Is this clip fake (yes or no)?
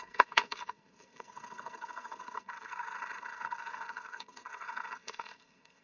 yes